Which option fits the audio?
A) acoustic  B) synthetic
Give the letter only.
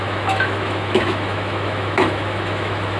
B